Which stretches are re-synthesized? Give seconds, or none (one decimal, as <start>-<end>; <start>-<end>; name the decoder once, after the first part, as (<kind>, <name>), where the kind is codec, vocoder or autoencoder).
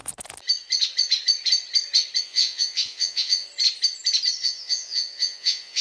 2.2-3.5 (vocoder, Vocos); 4.4-5.8